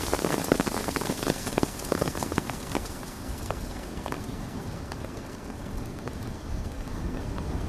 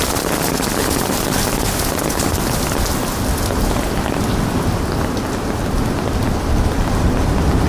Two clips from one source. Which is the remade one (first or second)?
first